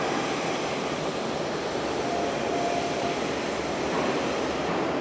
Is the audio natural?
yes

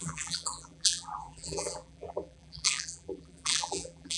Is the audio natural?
no